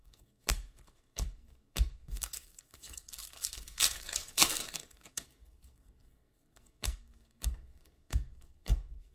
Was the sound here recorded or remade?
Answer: remade